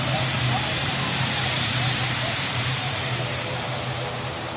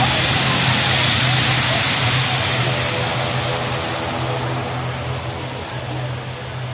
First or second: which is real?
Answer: second